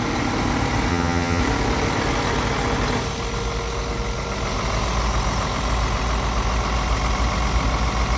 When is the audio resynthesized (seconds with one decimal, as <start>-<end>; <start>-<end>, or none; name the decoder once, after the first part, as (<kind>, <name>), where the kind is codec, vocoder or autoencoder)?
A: 0.9-1.4 (vocoder, HiFi-GAN)